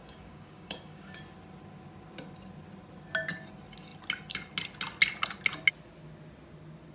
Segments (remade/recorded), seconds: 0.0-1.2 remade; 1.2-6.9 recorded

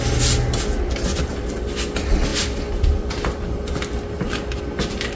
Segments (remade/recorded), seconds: 0.0-5.2 recorded

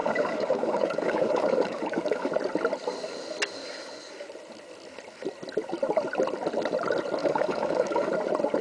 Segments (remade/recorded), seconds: 0.0-2.3 remade; 2.3-7.2 recorded; 7.2-8.1 remade; 8.1-8.6 recorded

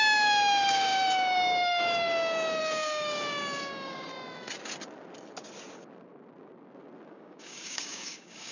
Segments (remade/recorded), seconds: 0.0-4.1 remade; 4.1-7.1 recorded; 7.1-8.5 remade

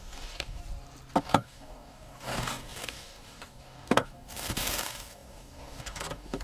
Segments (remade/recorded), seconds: 0.0-0.6 remade; 0.6-1.2 recorded; 1.2-6.4 remade

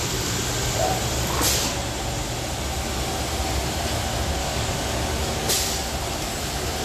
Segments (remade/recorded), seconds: 0.0-4.4 recorded; 4.4-5.5 remade; 5.5-6.8 recorded

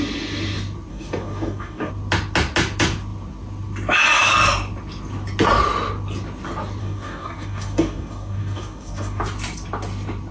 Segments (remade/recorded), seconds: 0.0-0.9 recorded; 0.9-1.9 remade; 1.9-6.8 recorded; 6.8-9.2 remade; 9.2-10.3 recorded